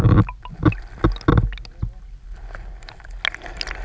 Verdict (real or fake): real